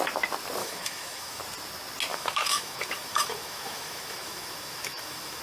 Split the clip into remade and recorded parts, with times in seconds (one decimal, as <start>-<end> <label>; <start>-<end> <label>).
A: 0.0-0.6 recorded; 0.6-1.4 remade; 1.4-2.1 recorded; 2.1-5.4 remade